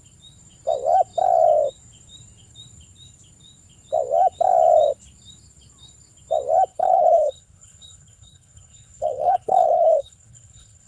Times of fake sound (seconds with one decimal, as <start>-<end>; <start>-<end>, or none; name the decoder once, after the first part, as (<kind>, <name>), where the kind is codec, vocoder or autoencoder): 6.7-10.9 (codec, HILCodec)